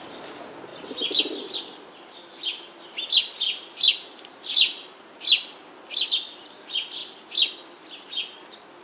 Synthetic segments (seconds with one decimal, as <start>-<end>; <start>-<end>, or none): none